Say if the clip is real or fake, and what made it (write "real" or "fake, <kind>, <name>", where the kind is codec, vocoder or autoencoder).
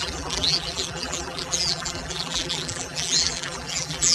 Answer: fake, vocoder, BigVGAN v2